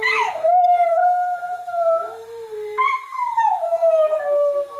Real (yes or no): no